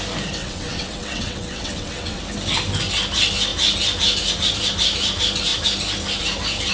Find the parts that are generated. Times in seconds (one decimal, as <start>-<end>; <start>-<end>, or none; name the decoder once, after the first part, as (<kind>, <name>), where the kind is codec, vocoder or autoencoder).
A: 0.4-2.2 (vocoder, WaveNeXt)